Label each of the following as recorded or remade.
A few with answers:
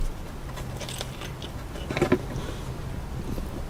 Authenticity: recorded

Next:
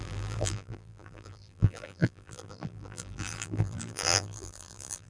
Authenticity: remade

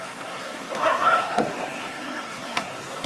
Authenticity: remade